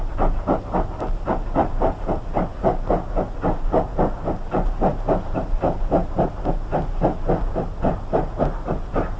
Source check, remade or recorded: recorded